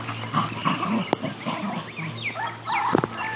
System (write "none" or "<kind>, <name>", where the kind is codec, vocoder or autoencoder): none